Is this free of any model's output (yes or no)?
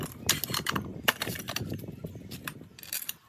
yes